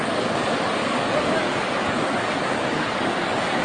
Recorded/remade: remade